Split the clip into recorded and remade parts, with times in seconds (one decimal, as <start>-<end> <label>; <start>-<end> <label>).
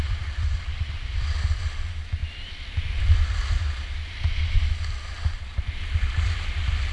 0.0-6.9 recorded